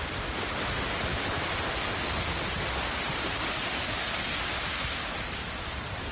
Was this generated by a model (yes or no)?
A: no